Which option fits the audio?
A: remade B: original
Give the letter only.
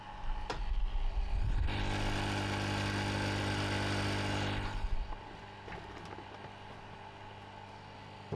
B